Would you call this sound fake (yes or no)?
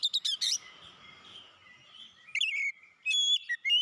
no